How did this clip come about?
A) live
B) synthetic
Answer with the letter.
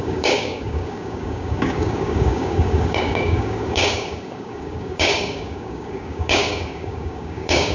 B